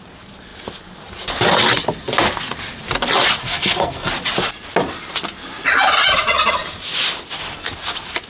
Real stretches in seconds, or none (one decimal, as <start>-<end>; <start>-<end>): 0.0-3.4; 4.1-8.3